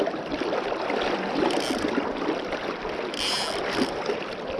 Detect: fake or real real